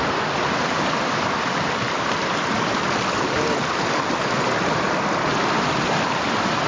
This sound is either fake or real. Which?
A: fake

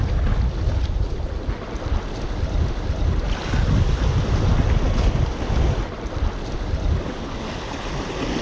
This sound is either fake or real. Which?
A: real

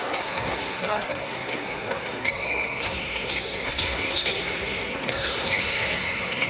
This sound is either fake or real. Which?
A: fake